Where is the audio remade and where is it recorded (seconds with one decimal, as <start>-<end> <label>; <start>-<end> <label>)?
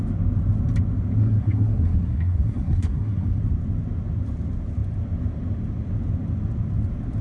0.0-1.2 recorded; 1.2-3.4 remade; 3.4-7.2 recorded